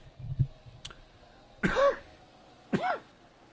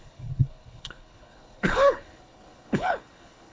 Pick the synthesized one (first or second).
second